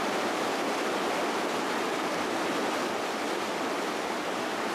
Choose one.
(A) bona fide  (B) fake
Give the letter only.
A